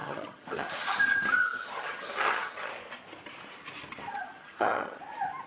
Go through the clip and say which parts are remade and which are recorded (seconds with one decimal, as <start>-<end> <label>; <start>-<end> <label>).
0.0-2.7 remade; 2.7-4.1 recorded; 4.1-5.0 remade; 5.0-5.5 recorded